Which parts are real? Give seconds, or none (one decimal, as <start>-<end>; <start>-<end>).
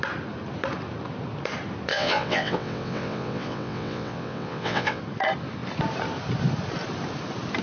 0.0-1.9; 5.0-7.6